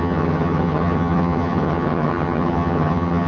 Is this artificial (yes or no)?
yes